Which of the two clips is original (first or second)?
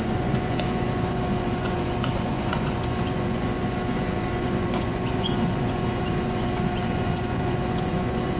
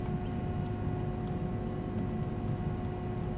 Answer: second